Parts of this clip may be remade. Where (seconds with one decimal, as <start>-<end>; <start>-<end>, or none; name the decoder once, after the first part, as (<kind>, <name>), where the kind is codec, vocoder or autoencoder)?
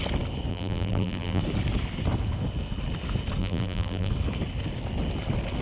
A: 0.5-1.4 (vocoder, BigVGAN v2); 3.4-4.1